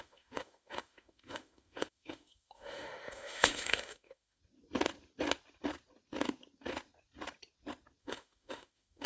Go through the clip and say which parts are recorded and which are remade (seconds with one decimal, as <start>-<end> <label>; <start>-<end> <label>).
0.0-4.4 remade; 4.4-8.0 recorded; 8.0-9.1 remade